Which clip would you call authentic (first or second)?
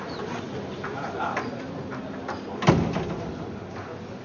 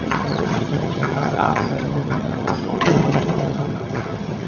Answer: first